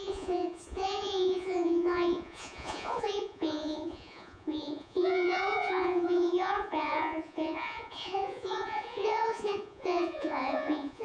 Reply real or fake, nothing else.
fake